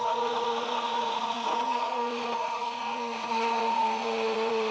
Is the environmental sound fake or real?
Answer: fake